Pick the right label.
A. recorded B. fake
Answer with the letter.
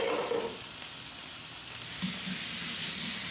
A